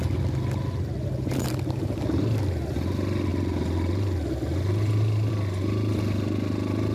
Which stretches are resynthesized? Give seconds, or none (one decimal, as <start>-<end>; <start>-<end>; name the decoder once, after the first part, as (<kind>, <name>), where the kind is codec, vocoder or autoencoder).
none